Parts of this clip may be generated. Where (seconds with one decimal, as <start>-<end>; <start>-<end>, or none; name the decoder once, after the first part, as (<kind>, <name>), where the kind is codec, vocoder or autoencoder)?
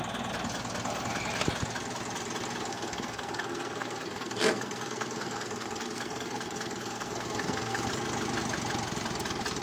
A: 2.7-7.9 (codec, SNAC)